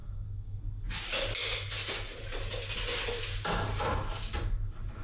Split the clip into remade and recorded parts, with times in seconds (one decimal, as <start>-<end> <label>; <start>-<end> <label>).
0.0-0.6 remade; 0.6-5.0 recorded